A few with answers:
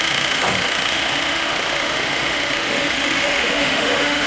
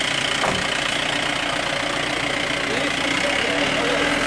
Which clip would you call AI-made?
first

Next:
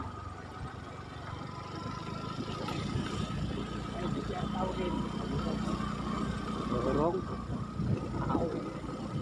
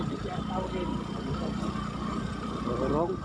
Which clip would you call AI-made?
second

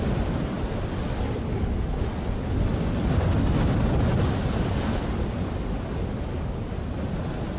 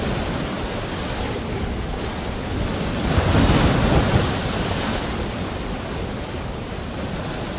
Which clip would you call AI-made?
second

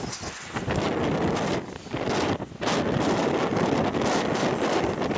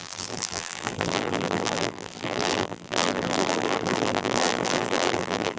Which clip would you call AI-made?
second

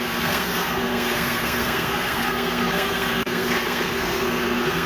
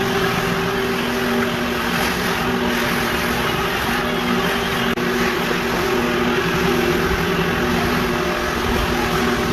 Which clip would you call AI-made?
first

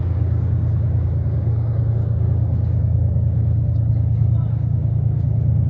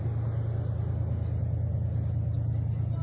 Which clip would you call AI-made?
first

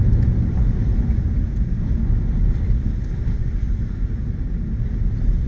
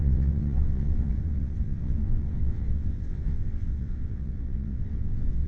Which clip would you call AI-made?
second